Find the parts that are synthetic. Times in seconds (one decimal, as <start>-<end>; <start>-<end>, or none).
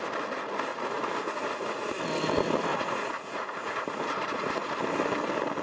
0.7-2.0; 2.7-4.6